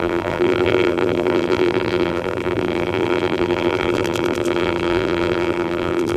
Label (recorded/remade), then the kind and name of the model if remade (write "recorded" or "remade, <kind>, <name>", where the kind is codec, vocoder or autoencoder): remade, vocoder, BigVGAN v2